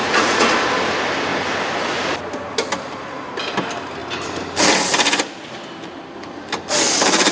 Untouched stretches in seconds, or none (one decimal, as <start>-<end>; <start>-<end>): 0.5-7.3